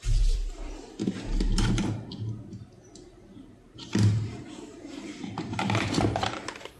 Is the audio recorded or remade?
remade